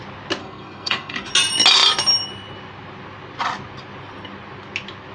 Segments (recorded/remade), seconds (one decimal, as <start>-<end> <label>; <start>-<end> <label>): 0.0-0.4 recorded; 0.4-1.3 remade; 1.3-5.1 recorded